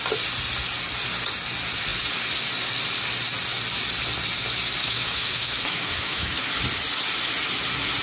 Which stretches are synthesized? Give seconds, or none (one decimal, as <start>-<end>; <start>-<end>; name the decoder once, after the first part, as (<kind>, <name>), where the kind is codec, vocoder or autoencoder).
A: 4.8-6.5 (autoencoder, DAC-VAE)